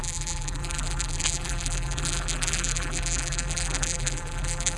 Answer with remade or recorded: remade